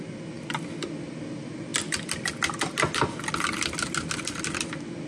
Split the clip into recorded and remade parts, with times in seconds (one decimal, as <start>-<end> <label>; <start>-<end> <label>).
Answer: 0.0-5.1 recorded